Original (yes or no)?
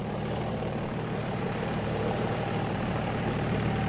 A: no